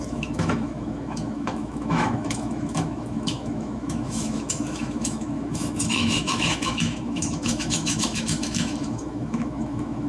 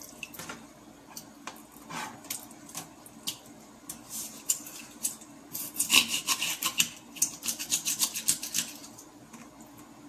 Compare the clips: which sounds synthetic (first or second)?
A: first